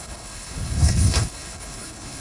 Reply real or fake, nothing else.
fake